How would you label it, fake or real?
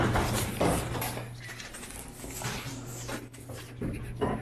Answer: real